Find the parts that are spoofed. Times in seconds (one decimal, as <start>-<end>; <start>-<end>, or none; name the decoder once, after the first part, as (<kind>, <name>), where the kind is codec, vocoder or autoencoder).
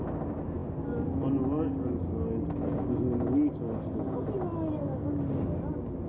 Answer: none